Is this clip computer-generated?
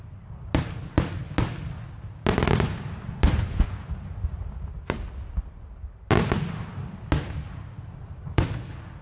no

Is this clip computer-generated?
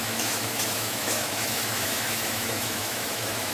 yes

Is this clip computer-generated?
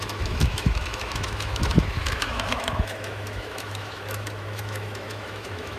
yes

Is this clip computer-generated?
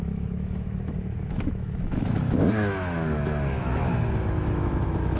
yes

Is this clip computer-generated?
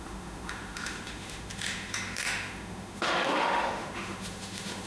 yes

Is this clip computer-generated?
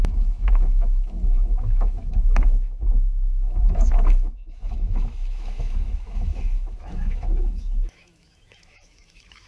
yes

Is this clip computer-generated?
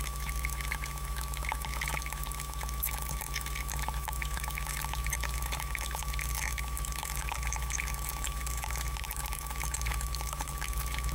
yes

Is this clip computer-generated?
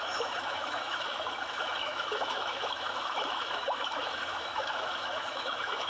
yes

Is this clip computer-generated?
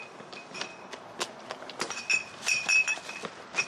no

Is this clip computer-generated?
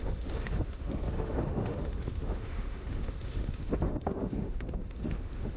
yes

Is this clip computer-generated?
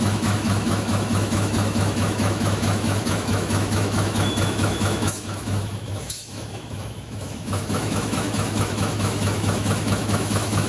yes